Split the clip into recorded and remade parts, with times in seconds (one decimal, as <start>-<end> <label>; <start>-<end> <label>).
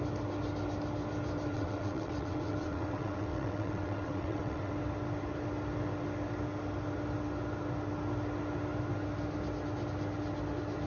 0.0-1.5 recorded; 1.5-4.7 remade; 4.7-10.9 recorded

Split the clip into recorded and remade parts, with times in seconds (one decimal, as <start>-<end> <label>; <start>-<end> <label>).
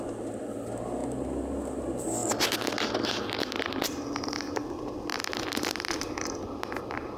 0.0-7.2 recorded